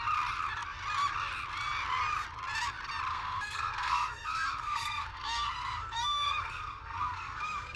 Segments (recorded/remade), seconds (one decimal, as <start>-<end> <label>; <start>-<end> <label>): 0.0-3.1 recorded; 3.1-7.8 remade